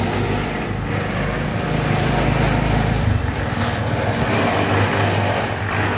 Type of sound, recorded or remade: recorded